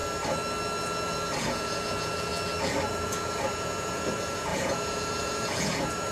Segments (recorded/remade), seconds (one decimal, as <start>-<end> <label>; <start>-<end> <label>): 0.0-1.4 recorded; 1.4-2.3 remade; 2.3-2.9 recorded; 2.9-6.1 remade